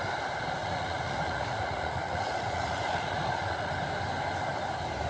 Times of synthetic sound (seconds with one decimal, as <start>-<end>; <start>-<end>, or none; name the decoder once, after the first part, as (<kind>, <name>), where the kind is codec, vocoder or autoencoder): 0.6-3.7 (vocoder, Vocos)